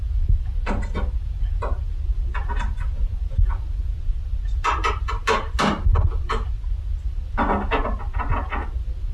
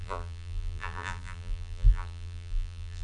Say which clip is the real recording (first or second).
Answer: first